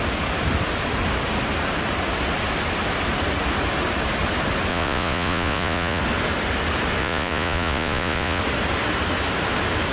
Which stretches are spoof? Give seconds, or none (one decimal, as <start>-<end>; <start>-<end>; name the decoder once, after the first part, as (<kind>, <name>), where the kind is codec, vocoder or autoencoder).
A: 4.7-6.0 (vocoder, Vocos); 7.0-8.4